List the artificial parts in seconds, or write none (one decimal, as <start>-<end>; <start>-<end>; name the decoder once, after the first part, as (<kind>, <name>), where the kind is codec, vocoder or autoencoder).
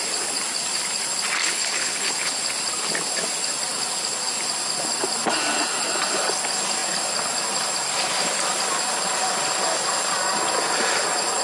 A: 1.4-2.4 (codec, HILCodec)